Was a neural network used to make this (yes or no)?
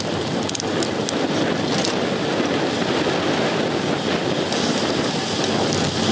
no